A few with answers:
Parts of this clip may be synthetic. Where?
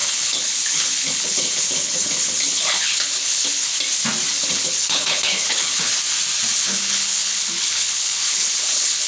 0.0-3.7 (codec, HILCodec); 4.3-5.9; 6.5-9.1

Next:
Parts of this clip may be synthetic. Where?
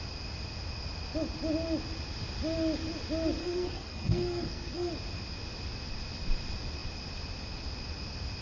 3.4-4.9 (codec, SNAC)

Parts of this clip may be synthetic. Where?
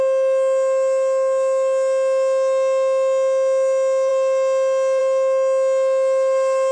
none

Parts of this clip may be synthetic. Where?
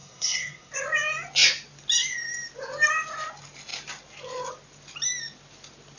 0.0-0.7 (codec, SNAC)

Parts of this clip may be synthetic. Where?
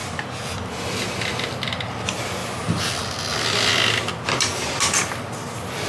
0.0-1.3 (vocoder, BigVGAN v2); 2.4-3.0; 4.5-5.0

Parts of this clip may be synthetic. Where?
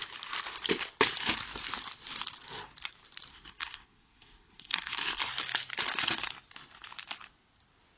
3.3-5.2 (codec, SNAC)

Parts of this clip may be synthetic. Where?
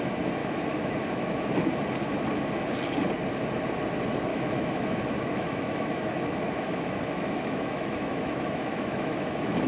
0.4-1.7 (autoencoder, DAC-VAE); 4.3-9.7